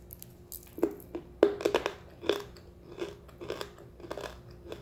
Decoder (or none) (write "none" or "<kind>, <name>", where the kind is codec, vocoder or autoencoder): none